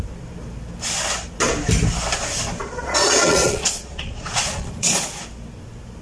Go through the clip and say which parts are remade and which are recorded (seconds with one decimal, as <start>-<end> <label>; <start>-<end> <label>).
0.0-2.6 recorded; 2.6-5.2 remade; 5.2-6.0 recorded